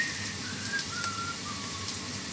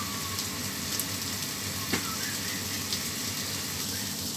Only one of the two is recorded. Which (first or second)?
second